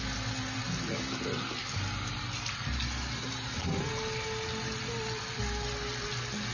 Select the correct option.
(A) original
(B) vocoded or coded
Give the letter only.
A